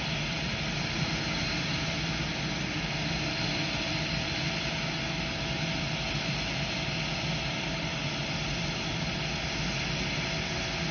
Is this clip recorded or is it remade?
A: recorded